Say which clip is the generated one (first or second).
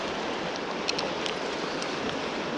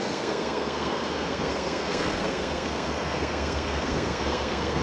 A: second